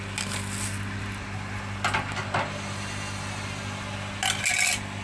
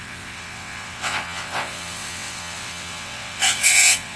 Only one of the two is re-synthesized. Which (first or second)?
second